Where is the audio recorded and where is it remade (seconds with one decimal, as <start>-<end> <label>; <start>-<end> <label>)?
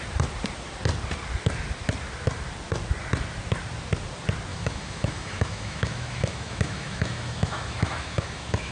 0.0-4.5 recorded; 4.5-8.7 remade